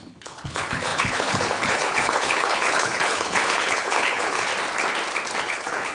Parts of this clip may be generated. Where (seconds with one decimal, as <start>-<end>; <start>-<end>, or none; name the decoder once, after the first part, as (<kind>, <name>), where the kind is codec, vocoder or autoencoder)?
0.0-4.5 (codec, HILCodec); 5.4-5.9